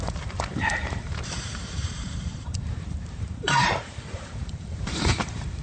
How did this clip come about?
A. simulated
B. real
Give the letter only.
A